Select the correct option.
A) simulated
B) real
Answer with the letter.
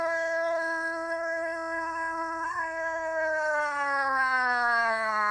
A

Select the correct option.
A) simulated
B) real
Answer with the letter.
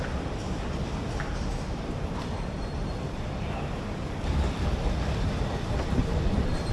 A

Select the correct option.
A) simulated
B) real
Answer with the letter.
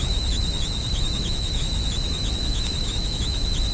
A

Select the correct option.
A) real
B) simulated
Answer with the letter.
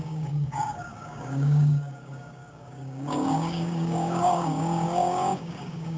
B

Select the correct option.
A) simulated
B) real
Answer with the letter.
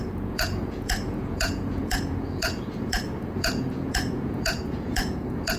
A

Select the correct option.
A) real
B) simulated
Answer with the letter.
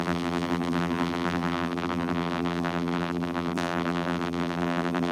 B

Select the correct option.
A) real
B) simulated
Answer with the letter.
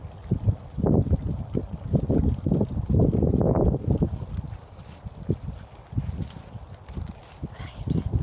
A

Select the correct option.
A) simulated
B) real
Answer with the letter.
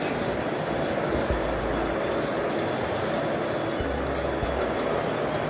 B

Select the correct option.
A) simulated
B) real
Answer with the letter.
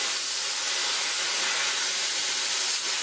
B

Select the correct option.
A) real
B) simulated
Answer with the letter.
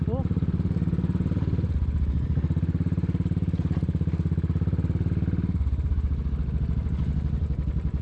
A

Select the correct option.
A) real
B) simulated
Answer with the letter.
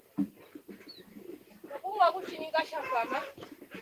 B